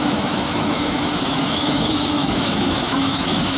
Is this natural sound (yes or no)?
no